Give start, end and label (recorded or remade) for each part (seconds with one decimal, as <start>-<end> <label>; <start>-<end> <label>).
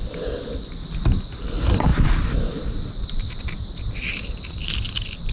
0.0-5.3 recorded